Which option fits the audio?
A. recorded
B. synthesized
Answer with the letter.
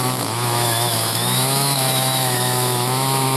B